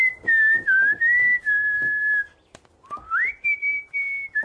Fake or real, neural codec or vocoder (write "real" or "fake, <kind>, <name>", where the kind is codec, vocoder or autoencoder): real